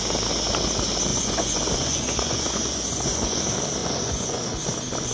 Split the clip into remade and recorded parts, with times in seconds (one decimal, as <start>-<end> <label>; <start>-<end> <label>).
0.0-1.1 recorded; 1.1-3.4 remade; 3.4-3.8 recorded; 3.8-4.4 remade; 4.4-5.1 recorded